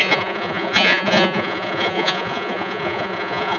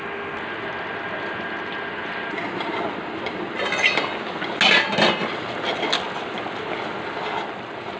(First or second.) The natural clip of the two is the second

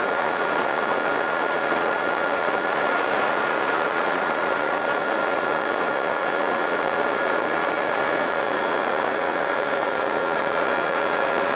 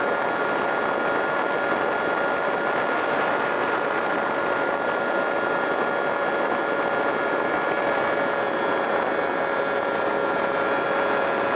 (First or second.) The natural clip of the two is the second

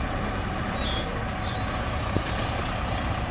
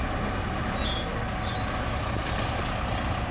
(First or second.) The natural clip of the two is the second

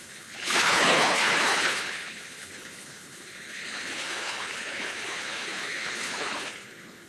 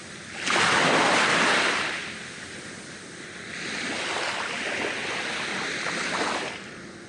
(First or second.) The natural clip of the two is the second